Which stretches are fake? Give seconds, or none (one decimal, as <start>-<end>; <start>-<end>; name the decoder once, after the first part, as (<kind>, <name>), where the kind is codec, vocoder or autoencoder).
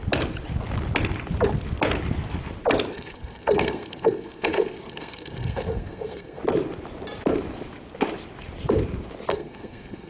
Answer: 2.9-6.4 (codec, SNAC); 9.3-10.1